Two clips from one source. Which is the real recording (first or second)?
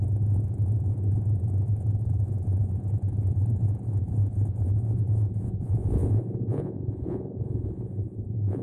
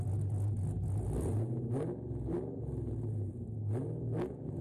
second